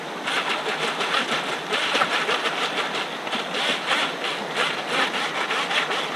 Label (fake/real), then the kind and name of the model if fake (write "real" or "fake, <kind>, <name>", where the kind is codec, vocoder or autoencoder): real